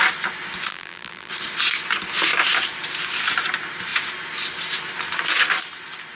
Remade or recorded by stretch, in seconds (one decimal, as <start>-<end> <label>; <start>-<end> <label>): 0.0-0.7 recorded; 0.7-1.3 remade; 1.3-6.1 recorded